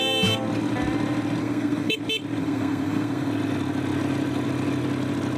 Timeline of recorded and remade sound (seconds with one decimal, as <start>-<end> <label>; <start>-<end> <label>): 0.0-1.4 recorded; 1.4-2.0 remade; 2.0-2.4 recorded; 2.4-3.3 remade; 3.3-5.4 recorded